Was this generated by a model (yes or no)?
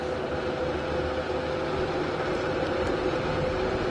no